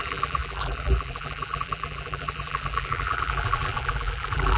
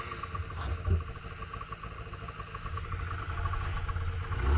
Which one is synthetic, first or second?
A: first